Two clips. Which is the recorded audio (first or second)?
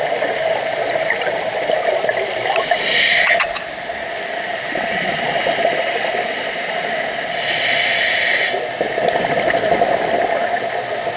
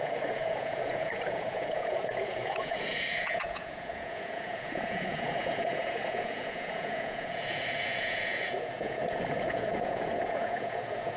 first